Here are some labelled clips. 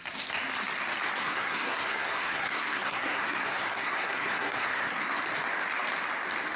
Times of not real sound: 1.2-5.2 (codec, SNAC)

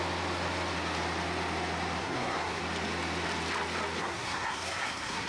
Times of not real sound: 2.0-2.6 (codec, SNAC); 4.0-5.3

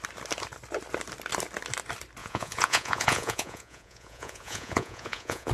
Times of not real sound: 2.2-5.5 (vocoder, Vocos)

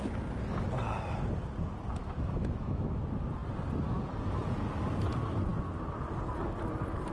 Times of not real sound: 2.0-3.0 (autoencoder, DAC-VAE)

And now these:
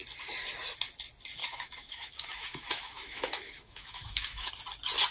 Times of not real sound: 1.4-4.5 (autoencoder, DAC-VAE)